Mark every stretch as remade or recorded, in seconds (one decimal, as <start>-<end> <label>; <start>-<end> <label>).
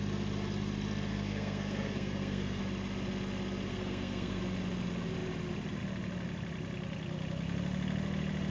0.0-1.1 recorded; 1.1-2.6 remade; 2.6-3.7 recorded; 3.7-4.4 remade; 4.4-8.5 recorded